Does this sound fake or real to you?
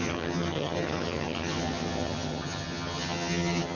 fake